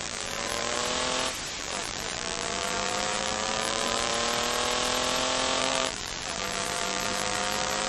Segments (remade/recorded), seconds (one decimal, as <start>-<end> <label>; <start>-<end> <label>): 0.0-0.8 remade; 0.8-1.6 recorded; 1.6-4.1 remade; 4.1-5.6 recorded; 5.6-7.9 remade